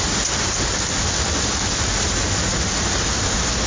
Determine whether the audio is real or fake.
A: real